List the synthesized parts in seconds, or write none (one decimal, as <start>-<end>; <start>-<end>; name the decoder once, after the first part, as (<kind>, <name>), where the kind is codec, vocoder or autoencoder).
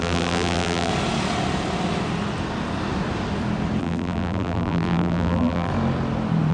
0.0-0.9 (vocoder, BigVGAN v2); 3.8-5.7